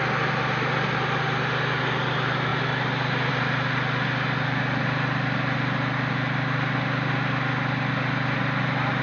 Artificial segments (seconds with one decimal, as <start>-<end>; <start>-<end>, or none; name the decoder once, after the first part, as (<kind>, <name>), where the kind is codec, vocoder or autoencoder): none